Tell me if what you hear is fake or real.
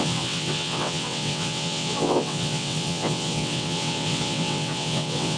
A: fake